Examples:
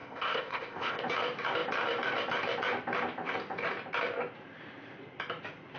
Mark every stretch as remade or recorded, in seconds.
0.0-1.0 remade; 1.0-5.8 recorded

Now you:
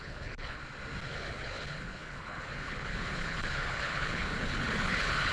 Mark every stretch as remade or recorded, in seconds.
0.0-0.6 remade; 0.6-1.1 recorded; 1.1-5.3 remade

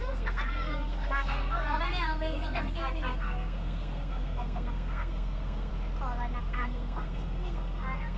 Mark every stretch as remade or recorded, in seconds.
0.0-5.7 remade; 5.7-6.4 recorded; 6.4-8.2 remade